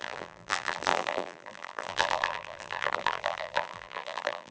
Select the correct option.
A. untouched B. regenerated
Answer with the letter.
B